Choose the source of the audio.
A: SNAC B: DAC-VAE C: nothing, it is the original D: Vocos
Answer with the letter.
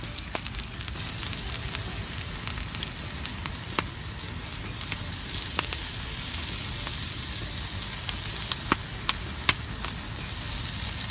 C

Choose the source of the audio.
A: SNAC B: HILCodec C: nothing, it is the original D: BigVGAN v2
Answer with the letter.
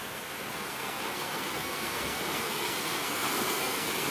A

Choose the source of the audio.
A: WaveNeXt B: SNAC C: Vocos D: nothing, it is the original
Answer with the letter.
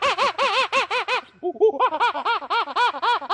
D